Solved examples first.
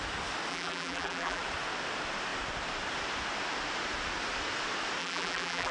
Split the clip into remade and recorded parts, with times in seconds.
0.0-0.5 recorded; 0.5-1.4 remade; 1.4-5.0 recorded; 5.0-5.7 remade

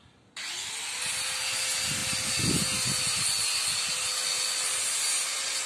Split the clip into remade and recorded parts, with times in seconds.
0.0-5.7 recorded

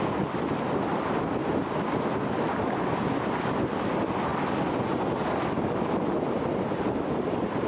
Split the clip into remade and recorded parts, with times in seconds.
0.0-7.7 recorded